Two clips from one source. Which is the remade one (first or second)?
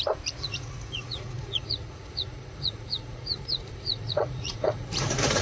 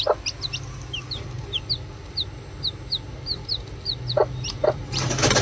first